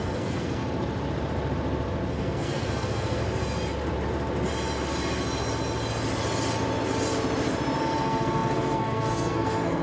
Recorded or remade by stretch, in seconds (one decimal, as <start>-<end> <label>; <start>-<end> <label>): 0.0-0.6 remade; 0.6-2.1 recorded; 2.1-3.2 remade; 3.2-7.8 recorded; 7.8-9.8 remade